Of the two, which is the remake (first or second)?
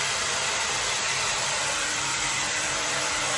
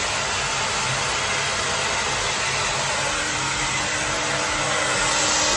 first